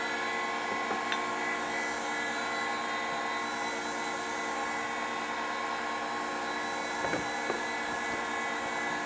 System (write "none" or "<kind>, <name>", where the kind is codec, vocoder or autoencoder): none